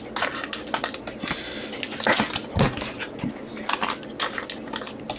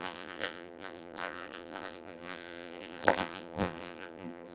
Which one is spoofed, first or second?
second